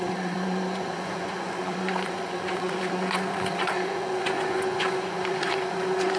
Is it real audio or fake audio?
fake